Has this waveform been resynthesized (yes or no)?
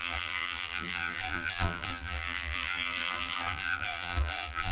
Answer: yes